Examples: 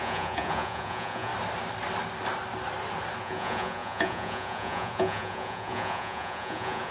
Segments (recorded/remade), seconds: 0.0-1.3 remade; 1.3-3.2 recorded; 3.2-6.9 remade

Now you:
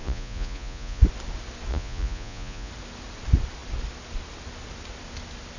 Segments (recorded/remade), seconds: 0.0-1.0 remade; 1.0-1.7 recorded; 1.7-2.7 remade; 2.7-5.6 recorded

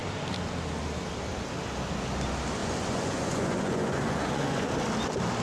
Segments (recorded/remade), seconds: 0.0-2.6 recorded; 2.6-4.7 remade; 4.7-5.4 recorded

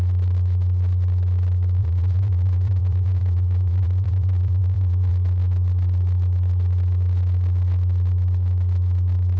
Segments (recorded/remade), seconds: 0.0-1.8 recorded; 1.8-5.1 remade; 5.1-9.4 recorded

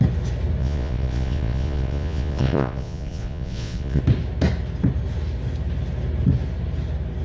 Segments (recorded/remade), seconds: 0.0-0.6 recorded; 0.6-4.0 remade; 4.0-7.2 recorded